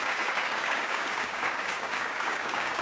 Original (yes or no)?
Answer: no